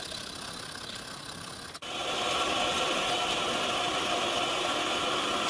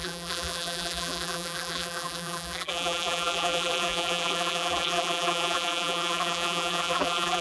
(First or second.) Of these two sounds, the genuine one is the first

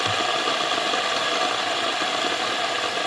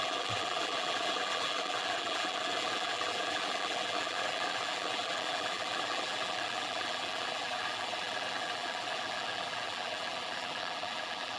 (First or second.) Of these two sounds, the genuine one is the first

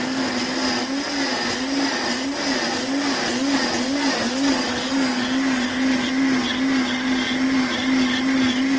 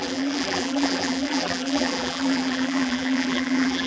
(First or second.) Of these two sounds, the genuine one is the first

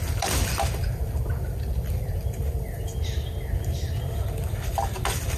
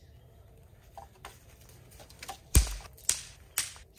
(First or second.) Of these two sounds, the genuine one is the second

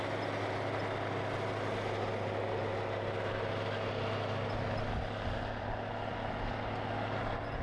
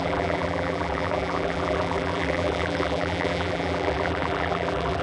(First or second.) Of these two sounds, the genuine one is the first